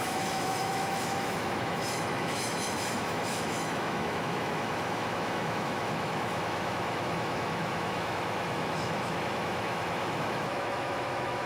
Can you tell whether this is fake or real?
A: fake